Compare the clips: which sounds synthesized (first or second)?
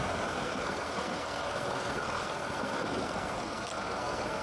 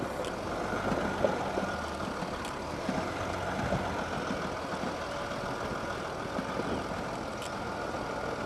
first